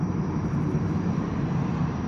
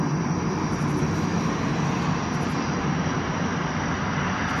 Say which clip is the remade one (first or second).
first